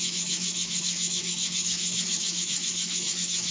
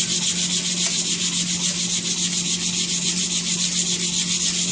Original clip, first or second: second